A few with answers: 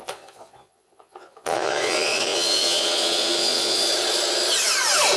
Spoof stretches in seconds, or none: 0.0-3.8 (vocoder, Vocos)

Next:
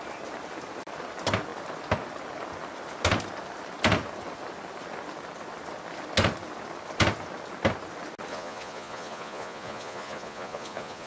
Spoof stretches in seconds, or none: 8.3-11.1 (vocoder, Vocos)

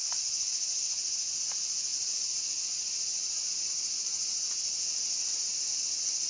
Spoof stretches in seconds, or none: none

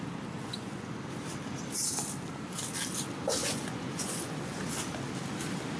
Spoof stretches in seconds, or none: 0.4-1.0 (vocoder, Vocos); 3.4-4.6